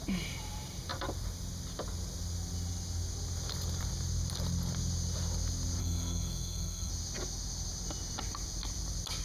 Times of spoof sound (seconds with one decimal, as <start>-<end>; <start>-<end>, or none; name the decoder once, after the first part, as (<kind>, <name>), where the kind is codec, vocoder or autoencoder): 5.8-6.9 (codec, SNAC)